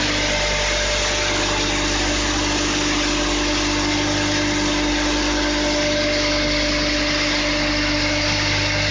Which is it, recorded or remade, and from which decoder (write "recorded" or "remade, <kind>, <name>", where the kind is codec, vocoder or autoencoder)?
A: recorded